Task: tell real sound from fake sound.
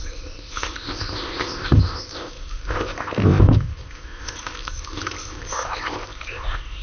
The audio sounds fake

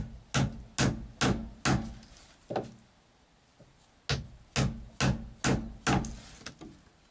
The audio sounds real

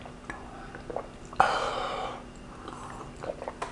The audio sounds real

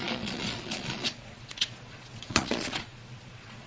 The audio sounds fake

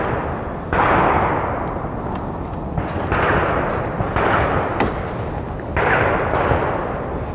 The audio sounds real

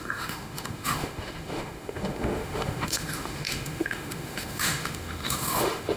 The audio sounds fake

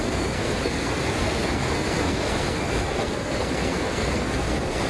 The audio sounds fake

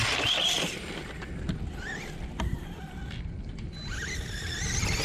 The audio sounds real